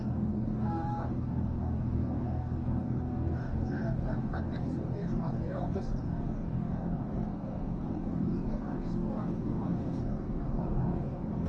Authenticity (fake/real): fake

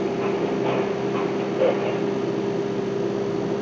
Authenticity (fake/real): real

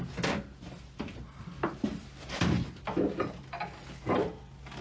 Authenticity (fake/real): real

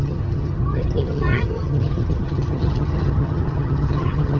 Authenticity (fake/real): fake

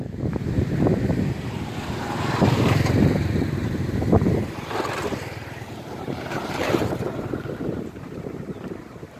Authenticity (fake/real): fake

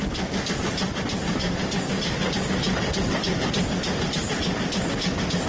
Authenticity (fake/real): real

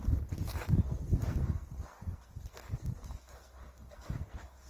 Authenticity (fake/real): fake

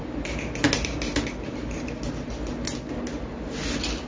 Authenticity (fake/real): real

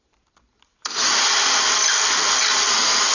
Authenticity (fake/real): real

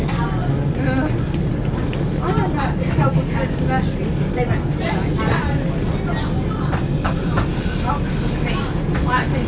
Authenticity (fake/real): real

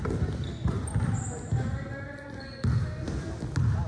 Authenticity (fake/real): real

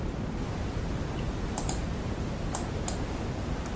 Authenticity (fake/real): fake